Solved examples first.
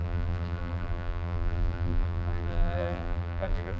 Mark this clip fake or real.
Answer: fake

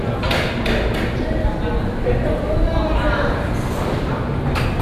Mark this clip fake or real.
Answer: real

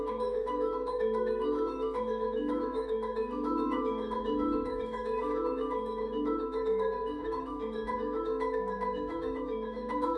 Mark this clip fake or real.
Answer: fake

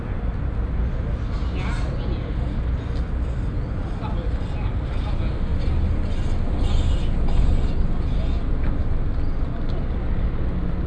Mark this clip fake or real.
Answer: real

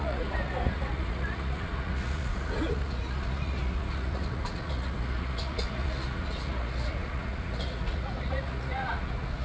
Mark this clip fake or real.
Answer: fake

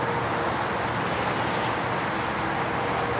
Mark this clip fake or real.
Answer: real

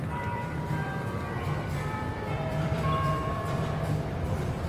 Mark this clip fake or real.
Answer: fake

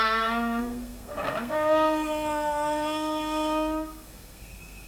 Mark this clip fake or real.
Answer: fake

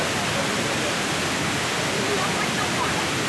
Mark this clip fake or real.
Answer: real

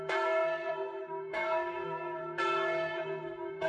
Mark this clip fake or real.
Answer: fake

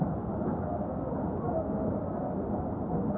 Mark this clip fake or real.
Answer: real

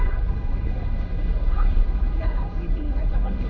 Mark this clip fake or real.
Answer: fake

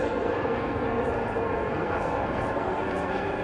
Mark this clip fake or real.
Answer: fake